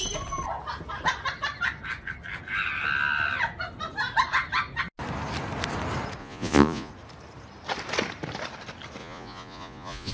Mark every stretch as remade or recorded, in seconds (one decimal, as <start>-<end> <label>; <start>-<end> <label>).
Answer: 0.0-6.2 recorded; 6.2-6.9 remade; 6.9-9.0 recorded; 9.0-10.1 remade